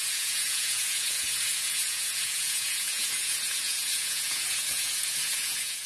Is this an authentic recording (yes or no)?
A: no